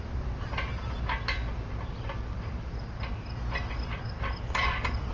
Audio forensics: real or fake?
real